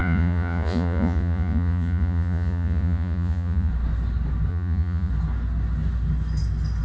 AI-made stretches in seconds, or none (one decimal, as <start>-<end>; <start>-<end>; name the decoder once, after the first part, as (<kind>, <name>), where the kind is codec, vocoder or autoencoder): 0.0-3.7 (vocoder, Vocos); 4.5-5.1